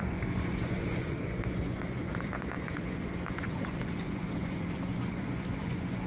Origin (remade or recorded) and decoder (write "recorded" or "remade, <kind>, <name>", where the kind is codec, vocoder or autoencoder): remade, vocoder, Vocos